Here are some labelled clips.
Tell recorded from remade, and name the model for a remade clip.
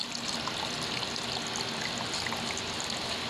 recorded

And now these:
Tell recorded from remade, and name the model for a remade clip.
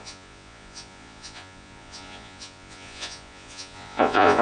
remade, vocoder, Vocos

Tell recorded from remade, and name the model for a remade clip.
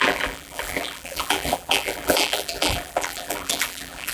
remade, vocoder, BigVGAN v2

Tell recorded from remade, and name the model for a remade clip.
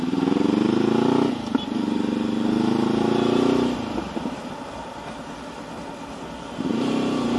recorded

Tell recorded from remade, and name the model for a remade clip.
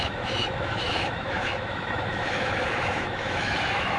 remade, autoencoder, DAC-VAE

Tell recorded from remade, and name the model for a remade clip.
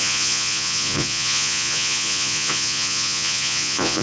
remade, vocoder, Vocos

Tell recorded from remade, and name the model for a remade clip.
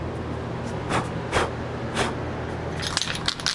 recorded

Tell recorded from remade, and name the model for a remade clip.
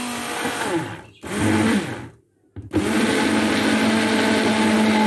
recorded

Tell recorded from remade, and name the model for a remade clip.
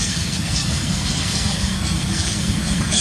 remade, codec, SNAC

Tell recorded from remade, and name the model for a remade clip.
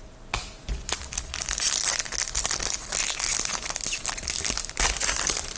recorded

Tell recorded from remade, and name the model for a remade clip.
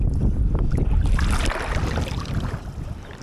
remade, vocoder, BigVGAN v2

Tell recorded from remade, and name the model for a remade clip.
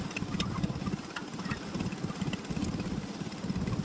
recorded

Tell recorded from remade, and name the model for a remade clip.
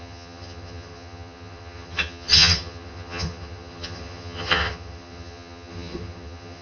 remade, vocoder, HiFi-GAN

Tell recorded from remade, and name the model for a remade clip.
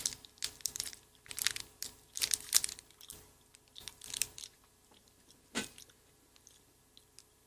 recorded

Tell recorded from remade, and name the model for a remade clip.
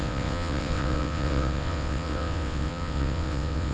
remade, vocoder, WaveNeXt